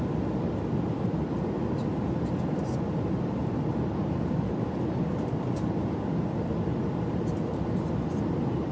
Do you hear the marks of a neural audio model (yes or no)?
no